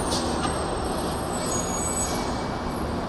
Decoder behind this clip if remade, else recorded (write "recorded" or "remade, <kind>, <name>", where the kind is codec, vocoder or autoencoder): recorded